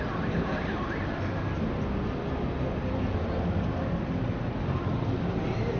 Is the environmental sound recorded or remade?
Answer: recorded